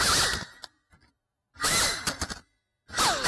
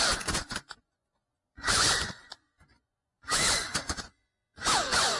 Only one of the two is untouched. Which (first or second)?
first